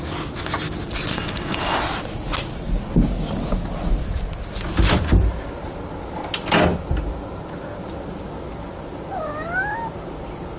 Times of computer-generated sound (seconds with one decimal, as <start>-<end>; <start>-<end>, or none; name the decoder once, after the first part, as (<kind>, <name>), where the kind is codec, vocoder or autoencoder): 1.1-1.8 (codec, DAC)

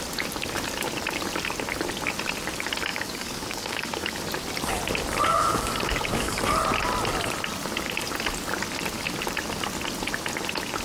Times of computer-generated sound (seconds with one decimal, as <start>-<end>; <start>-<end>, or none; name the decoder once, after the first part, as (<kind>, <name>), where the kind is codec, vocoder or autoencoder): 2.9-4.2 (codec, DAC); 5.3-6.4

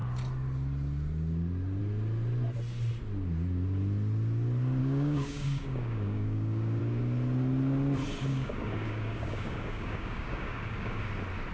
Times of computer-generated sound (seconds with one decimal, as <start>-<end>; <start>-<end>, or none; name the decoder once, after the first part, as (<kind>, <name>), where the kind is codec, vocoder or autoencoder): 4.8-6.8 (codec, DAC); 8.3-11.0

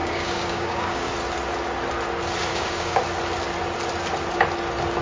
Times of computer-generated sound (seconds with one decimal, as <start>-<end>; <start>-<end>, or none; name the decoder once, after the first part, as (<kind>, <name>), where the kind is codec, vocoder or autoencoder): 0.0-1.1 (codec, DAC); 2.5-3.0